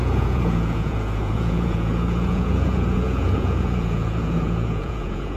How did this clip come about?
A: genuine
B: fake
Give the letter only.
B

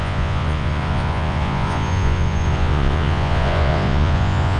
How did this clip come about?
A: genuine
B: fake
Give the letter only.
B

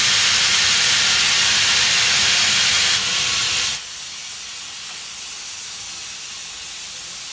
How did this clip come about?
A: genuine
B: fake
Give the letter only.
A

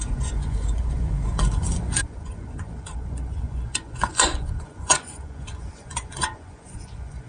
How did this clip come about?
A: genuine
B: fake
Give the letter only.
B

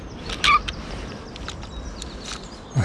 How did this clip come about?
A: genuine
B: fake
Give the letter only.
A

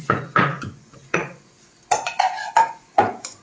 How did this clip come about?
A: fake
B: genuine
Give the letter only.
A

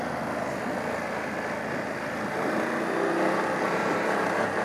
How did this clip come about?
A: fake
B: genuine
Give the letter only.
B